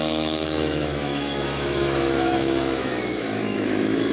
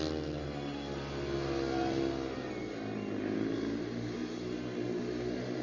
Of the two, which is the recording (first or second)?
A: second